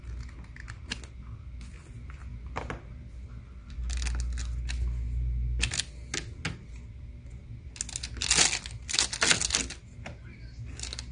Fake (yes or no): no